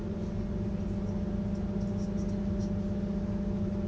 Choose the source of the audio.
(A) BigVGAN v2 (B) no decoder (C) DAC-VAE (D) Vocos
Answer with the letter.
B